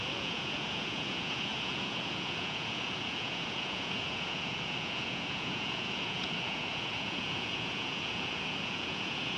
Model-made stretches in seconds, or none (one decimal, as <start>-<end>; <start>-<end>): 0.0-9.4